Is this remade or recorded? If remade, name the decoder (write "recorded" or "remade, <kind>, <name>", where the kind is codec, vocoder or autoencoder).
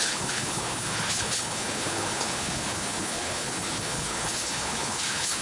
remade, codec, HILCodec